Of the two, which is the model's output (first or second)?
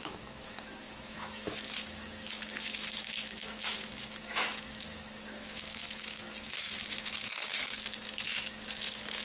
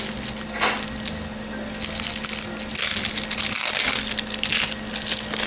first